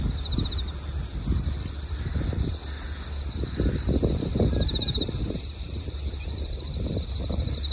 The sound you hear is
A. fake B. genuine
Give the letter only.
B